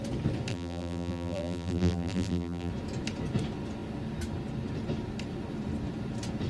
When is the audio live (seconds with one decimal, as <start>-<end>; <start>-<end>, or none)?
0.0-0.5; 2.7-6.5